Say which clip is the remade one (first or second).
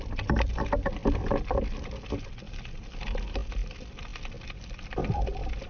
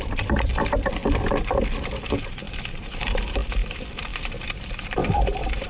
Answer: second